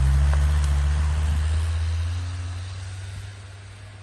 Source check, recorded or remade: recorded